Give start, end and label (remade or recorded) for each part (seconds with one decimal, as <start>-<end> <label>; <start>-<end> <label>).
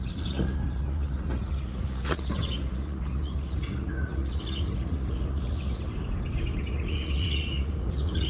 0.0-5.9 remade; 5.9-6.6 recorded; 6.6-8.3 remade